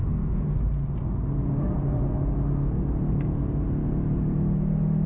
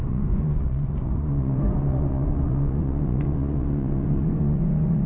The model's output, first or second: second